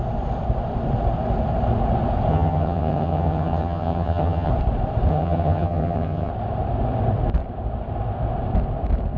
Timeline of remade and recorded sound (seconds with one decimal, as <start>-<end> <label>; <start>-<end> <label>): 0.0-2.3 recorded; 2.3-4.5 remade; 4.5-5.1 recorded; 5.1-6.3 remade; 6.3-9.2 recorded